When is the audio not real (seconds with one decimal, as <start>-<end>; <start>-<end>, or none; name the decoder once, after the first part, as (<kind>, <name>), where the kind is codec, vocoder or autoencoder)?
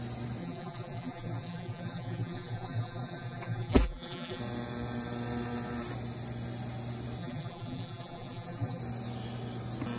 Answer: 0.4-4.4 (vocoder, BigVGAN v2); 7.2-8.8